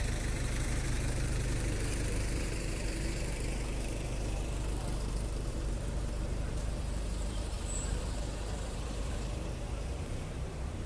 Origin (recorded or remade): remade